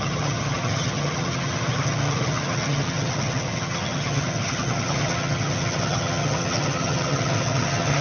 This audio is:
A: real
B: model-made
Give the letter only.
B